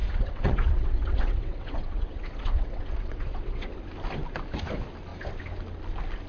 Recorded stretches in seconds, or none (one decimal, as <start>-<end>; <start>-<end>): 3.8-6.3